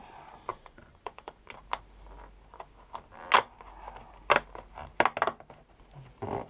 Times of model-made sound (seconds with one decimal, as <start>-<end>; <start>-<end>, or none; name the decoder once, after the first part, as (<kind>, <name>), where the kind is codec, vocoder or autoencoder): 0.5-1.5 (vocoder, Vocos)